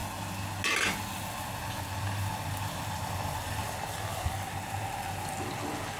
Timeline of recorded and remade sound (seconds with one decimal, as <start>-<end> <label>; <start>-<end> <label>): 0.0-6.0 recorded